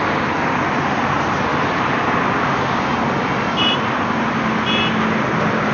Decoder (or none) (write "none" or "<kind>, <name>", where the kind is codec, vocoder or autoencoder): none